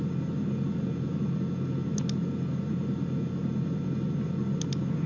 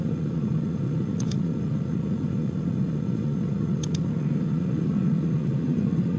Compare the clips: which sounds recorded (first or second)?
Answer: first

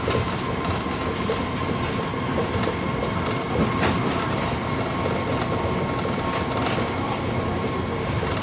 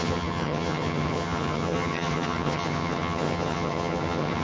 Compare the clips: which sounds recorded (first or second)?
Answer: first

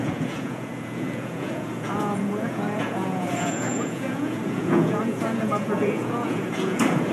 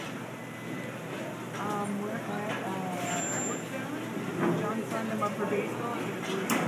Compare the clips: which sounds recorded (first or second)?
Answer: second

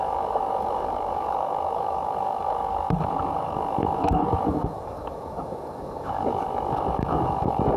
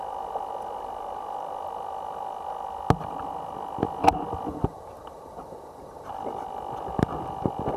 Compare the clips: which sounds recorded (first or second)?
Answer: second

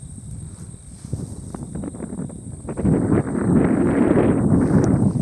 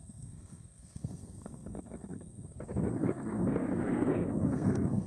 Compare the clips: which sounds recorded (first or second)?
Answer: first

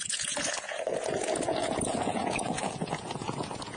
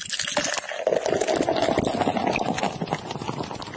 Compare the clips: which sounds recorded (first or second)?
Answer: second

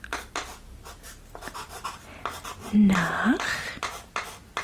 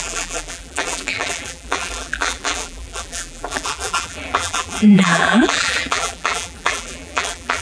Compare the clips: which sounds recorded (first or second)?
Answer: first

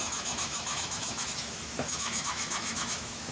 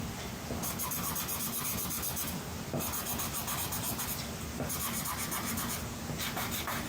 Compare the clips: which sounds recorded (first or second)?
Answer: second